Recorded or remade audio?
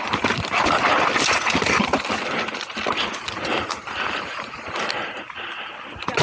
recorded